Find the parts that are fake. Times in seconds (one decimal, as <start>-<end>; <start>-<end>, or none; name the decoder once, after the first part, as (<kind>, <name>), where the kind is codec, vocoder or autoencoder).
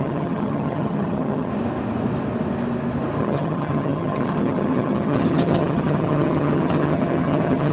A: 0.0-1.5 (vocoder, HiFi-GAN); 3.2-7.7